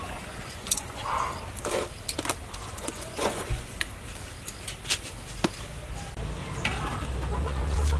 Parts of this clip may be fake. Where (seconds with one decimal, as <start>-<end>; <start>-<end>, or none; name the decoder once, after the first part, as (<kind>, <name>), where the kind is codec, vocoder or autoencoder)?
0.0-1.0 (vocoder, Vocos); 2.7-3.9; 7.4-8.0